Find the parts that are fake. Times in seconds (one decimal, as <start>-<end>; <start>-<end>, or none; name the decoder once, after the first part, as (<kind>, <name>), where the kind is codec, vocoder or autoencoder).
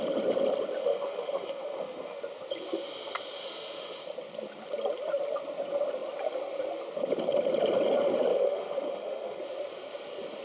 0.8-2.2 (autoencoder, DAC-VAE); 3.4-4.0; 8.3-9.4